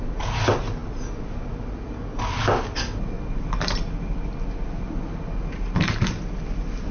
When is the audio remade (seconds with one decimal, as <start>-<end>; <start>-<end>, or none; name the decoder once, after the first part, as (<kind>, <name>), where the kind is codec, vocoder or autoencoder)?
none